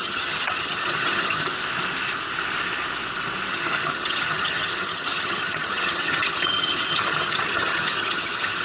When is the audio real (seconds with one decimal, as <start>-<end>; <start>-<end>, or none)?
1.5-3.5